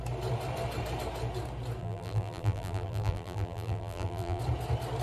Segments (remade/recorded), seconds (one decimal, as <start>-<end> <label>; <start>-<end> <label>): 0.0-1.8 recorded; 1.8-4.4 remade; 4.4-5.0 recorded